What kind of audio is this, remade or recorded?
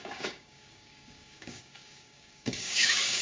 remade